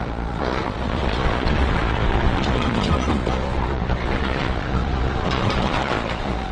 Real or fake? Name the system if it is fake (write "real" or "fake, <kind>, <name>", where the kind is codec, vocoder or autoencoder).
fake, vocoder, Vocos